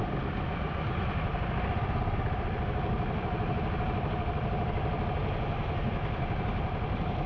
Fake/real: real